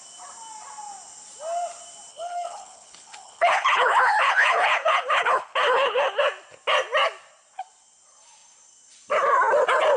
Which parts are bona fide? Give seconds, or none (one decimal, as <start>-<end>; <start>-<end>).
0.0-2.1; 6.2-10.0